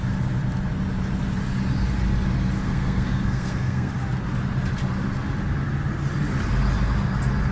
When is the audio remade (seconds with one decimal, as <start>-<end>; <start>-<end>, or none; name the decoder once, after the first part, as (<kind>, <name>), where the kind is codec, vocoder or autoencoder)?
2.6-3.9 (codec, SNAC)